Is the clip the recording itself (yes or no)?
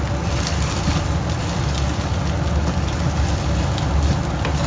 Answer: yes